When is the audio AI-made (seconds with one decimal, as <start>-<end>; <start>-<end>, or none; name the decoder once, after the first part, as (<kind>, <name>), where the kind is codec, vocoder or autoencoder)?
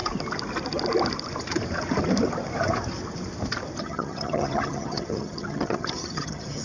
3.8-6.6 (vocoder, HiFi-GAN)